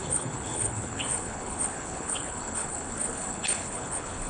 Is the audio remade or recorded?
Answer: remade